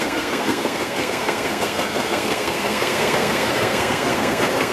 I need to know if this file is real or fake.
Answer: fake